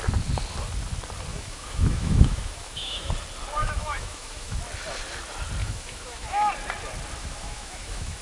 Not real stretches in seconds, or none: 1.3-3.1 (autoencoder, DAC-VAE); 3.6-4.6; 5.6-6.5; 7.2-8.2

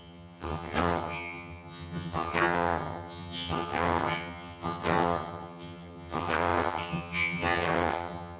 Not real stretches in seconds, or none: 0.0-8.4 (vocoder, HiFi-GAN)